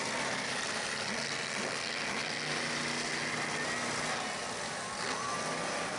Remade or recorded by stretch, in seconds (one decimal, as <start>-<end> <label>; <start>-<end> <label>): 0.0-6.0 recorded